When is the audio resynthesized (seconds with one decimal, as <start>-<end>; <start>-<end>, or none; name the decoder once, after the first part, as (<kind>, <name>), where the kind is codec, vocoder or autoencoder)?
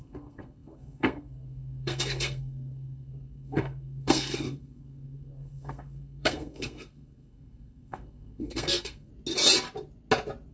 0.0-9.1 (codec, SNAC)